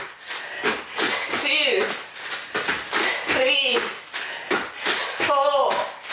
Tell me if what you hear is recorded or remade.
recorded